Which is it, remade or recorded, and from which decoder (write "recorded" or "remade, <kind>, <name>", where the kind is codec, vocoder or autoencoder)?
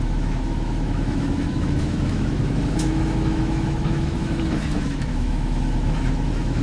remade, autoencoder, DAC-VAE